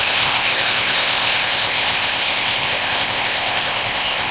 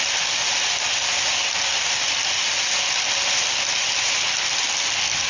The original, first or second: second